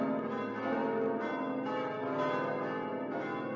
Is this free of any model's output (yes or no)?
yes